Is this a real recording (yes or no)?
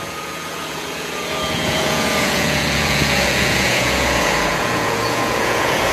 no